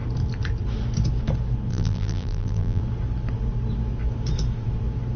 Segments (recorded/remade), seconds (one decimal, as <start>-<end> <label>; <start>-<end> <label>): 0.0-1.7 recorded; 1.7-2.8 remade; 2.8-5.2 recorded